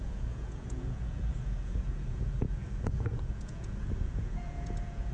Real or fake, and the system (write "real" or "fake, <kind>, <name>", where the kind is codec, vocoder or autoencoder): fake, vocoder, Vocos